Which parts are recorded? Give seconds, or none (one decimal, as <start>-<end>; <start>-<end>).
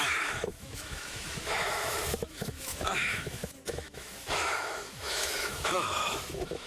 none